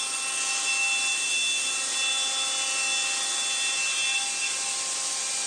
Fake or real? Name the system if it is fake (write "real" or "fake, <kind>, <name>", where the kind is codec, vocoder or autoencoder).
real